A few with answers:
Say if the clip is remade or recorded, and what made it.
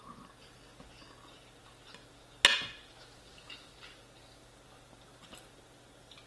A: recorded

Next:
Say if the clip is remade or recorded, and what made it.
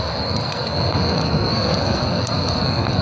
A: remade, codec, SNAC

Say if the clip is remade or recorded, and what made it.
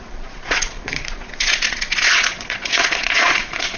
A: remade, vocoder, Vocos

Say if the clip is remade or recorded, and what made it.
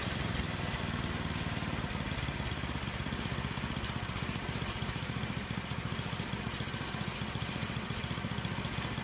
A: remade, vocoder, BigVGAN v2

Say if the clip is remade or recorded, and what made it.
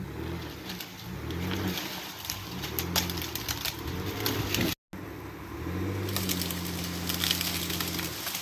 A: recorded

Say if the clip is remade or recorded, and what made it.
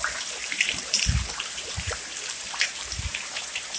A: remade, vocoder, BigVGAN v2